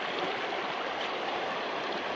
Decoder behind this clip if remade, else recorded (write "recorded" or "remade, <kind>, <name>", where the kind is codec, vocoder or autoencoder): recorded